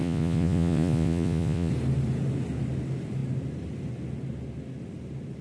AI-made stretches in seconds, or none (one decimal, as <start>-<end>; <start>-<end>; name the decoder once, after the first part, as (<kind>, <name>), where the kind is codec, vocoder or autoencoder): 0.0-1.7 (vocoder, Vocos)